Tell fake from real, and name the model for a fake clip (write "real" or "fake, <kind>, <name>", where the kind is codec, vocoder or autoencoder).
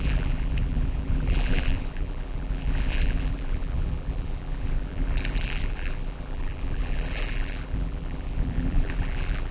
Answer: fake, vocoder, BigVGAN v2